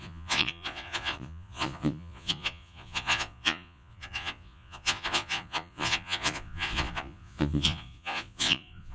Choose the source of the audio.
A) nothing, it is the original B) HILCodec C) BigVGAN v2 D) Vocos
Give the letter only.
D